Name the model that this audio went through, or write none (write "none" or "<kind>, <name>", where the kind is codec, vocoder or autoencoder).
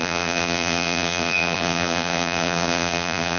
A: vocoder, BigVGAN v2